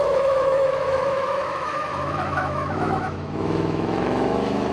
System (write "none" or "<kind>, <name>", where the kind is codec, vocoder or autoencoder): autoencoder, DAC-VAE